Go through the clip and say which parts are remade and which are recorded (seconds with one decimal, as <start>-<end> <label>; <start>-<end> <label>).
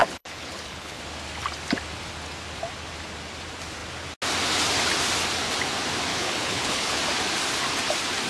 0.0-1.0 remade; 1.0-6.1 recorded; 6.1-7.0 remade; 7.0-8.3 recorded